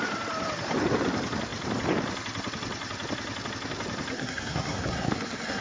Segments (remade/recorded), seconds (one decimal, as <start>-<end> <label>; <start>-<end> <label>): 0.0-4.1 recorded; 4.1-5.6 remade